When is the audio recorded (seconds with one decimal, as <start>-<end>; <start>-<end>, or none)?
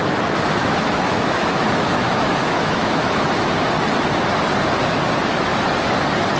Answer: 0.0-0.6; 3.5-6.4